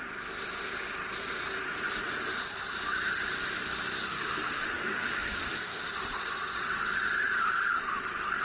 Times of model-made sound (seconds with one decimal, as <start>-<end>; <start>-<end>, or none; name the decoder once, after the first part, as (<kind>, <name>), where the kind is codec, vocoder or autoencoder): 4.1-5.8 (autoencoder, DAC-VAE)